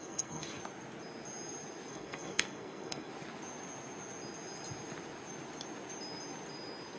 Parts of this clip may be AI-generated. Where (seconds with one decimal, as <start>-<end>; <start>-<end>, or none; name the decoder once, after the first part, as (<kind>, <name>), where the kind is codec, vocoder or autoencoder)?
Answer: 0.0-0.6 (codec, SNAC); 1.9-3.1